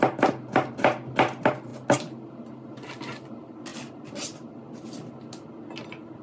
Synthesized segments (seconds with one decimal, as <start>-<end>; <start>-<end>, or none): none